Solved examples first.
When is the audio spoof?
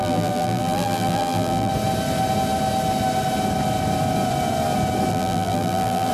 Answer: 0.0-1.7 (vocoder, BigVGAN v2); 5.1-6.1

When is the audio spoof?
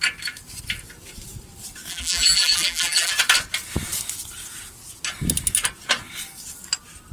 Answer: 1.9-3.1 (vocoder, BigVGAN v2)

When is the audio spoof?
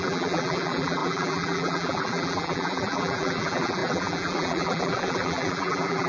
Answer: 0.0-6.1 (vocoder, BigVGAN v2)